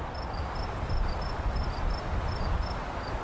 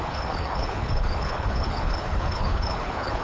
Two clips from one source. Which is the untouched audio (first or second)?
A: first